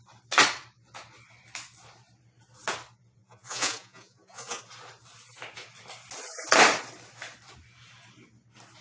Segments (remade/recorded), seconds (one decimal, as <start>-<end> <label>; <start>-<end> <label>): 0.0-3.2 recorded; 3.2-4.6 remade; 4.6-8.8 recorded